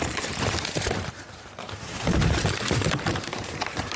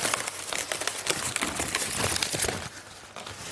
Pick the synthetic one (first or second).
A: first